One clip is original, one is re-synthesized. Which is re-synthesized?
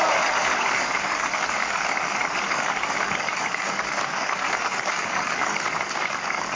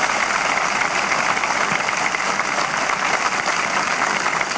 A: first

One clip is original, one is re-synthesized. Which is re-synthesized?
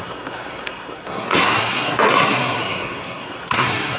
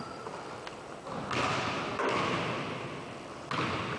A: first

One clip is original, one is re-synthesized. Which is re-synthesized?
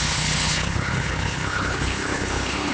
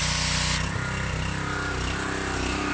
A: first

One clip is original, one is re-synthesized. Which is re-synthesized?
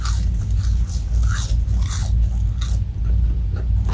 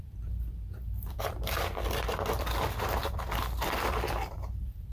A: second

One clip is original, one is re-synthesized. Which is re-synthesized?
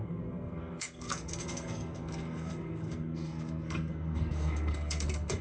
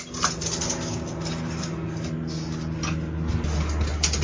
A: first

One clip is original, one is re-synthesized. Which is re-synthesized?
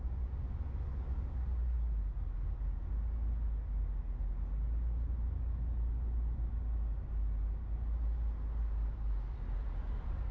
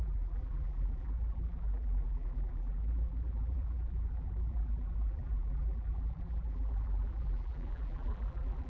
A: second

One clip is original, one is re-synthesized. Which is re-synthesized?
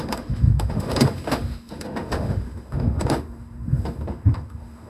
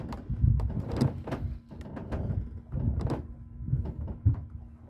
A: first